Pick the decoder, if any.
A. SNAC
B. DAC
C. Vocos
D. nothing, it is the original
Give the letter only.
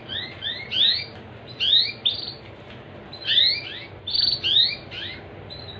D